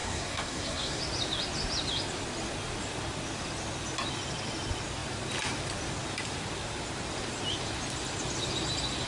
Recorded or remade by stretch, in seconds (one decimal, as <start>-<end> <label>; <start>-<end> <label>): 0.0-1.0 remade; 1.0-9.1 recorded